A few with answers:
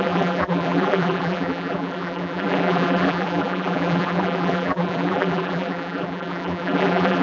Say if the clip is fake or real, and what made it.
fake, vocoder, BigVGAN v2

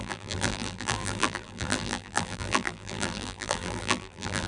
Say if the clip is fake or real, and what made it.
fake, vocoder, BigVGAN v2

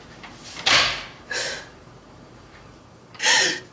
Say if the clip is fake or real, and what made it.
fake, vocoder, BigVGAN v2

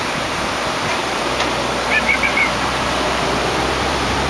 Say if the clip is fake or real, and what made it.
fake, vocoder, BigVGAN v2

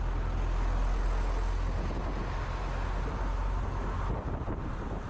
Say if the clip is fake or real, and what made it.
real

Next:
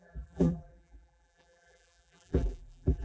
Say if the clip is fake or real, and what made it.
fake, vocoder, BigVGAN v2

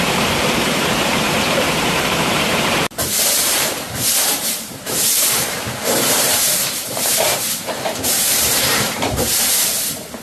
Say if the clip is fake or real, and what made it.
fake, vocoder, BigVGAN v2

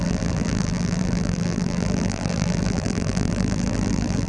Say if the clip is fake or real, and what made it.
fake, vocoder, BigVGAN v2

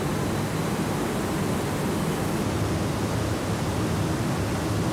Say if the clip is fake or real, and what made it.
real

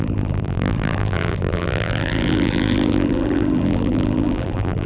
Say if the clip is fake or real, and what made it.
fake, vocoder, BigVGAN v2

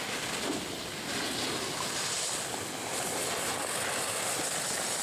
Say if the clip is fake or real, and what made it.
real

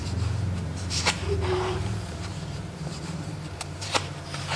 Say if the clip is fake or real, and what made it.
fake, vocoder, BigVGAN v2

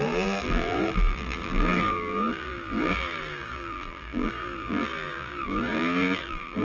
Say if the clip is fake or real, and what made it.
fake, vocoder, BigVGAN v2